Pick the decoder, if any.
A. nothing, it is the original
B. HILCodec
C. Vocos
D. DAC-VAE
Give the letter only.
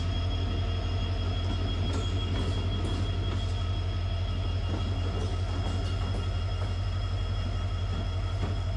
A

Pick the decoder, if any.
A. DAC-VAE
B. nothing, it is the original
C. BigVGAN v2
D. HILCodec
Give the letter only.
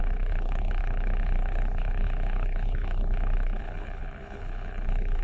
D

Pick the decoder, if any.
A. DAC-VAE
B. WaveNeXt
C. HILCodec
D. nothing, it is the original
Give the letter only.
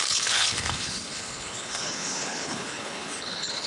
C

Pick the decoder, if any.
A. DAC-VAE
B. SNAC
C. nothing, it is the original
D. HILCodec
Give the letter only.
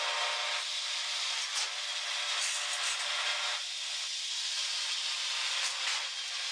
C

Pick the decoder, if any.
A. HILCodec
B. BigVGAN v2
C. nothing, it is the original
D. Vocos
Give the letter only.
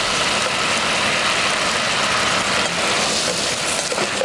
C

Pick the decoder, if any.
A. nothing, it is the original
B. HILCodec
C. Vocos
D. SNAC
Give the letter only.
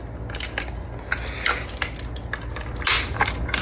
A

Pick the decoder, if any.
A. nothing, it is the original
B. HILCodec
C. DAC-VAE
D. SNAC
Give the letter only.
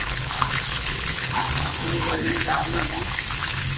B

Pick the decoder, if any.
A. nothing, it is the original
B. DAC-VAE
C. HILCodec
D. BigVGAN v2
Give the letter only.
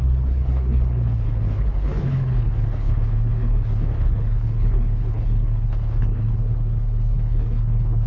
C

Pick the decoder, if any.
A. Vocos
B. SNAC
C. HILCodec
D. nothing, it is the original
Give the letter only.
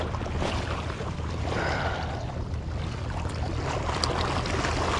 D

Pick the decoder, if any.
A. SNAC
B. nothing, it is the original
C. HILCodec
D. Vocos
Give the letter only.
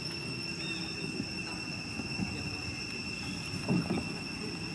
B